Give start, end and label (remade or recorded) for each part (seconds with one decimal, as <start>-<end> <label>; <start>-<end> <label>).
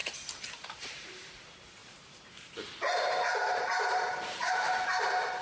0.0-5.4 remade